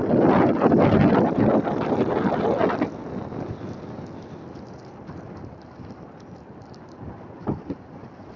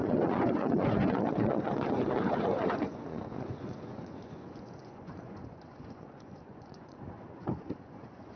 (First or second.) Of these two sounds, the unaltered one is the first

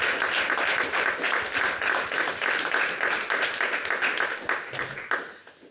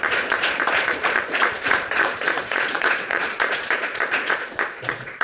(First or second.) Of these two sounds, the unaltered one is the first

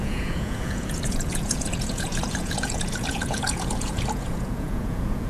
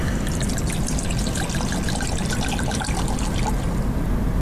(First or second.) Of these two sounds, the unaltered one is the second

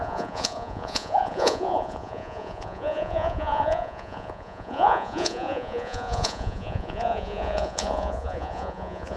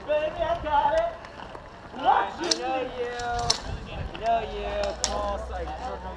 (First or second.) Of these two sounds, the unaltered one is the second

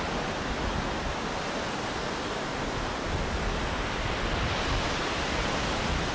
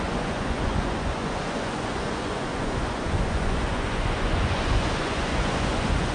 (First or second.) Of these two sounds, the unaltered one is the first